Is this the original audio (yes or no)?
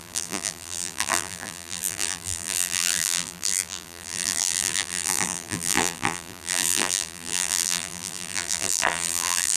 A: no